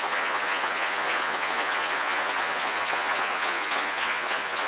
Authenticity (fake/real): fake